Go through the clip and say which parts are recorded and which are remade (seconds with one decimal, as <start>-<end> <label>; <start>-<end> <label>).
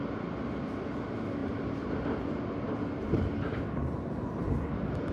0.0-1.4 recorded; 1.4-4.4 remade; 4.4-5.1 recorded